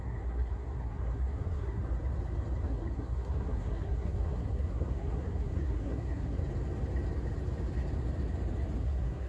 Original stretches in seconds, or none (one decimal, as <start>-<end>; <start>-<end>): 1.8-2.6; 6.4-8.8